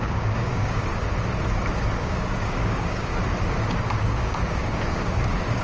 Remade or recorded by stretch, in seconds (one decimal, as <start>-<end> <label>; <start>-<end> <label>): 0.0-0.9 remade; 0.9-1.9 recorded; 1.9-3.1 remade; 3.1-3.8 recorded; 3.8-5.6 remade